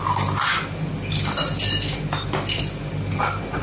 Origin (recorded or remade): recorded